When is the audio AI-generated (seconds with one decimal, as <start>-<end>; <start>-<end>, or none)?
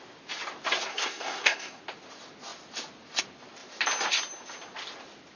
0.9-1.8